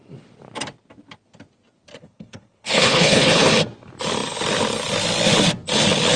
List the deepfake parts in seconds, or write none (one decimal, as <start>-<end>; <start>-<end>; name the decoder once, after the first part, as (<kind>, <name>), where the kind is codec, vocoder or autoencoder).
1.9-3.5 (codec, HILCodec)